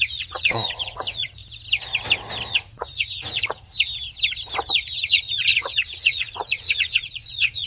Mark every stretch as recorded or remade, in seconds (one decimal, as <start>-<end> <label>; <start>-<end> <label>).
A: 0.0-1.4 remade; 1.4-2.5 recorded; 2.5-3.7 remade; 3.7-4.7 recorded; 4.7-7.7 remade